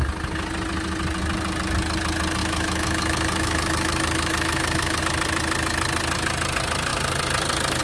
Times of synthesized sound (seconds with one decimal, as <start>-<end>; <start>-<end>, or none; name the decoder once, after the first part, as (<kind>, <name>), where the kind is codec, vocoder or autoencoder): 2.4-5.0 (autoencoder, DAC-VAE)